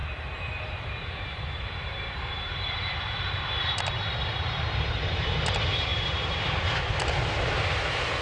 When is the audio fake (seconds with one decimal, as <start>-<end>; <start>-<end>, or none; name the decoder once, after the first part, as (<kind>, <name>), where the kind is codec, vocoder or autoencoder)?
0.0-8.2 (vocoder, BigVGAN v2)